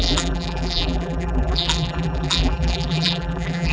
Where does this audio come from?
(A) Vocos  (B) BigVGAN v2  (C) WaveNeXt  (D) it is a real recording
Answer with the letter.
B